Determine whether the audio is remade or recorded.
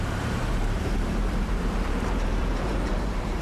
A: remade